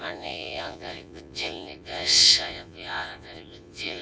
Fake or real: fake